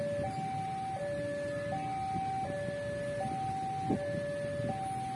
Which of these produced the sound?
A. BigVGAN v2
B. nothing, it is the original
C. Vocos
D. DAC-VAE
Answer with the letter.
B